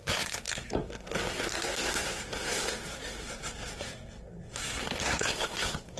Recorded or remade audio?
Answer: remade